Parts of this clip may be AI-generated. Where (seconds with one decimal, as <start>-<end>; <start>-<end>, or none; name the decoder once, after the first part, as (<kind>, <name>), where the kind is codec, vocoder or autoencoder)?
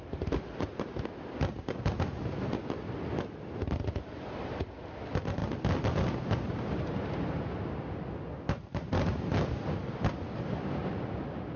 none